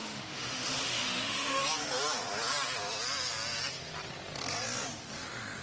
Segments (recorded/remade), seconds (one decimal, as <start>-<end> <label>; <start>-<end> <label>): 0.0-1.6 remade; 1.6-5.0 recorded; 5.0-5.6 remade